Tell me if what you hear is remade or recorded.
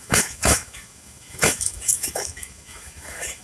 remade